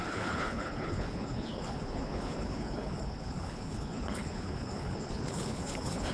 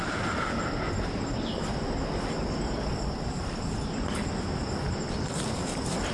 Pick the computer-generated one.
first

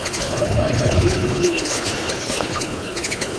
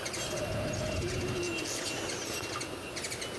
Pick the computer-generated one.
first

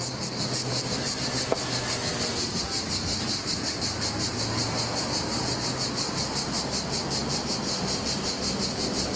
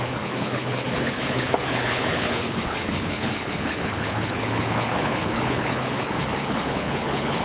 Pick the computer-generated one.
second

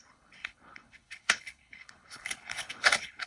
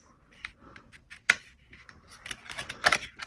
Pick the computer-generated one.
first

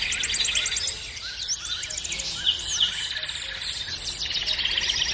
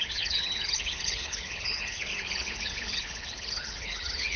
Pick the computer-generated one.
second